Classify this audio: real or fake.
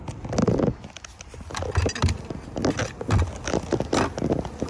real